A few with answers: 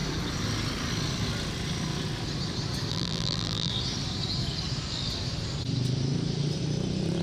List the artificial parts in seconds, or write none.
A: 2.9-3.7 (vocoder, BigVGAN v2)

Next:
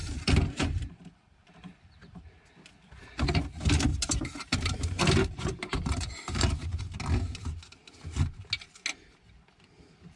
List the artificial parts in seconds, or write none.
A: 0.0-2.2 (vocoder, BigVGAN v2); 3.9-6.8